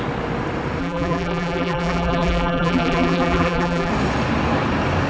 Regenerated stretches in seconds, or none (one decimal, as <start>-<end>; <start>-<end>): 0.8-3.9

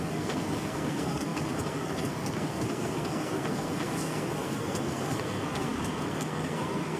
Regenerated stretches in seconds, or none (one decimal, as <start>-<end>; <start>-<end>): 0.0-7.0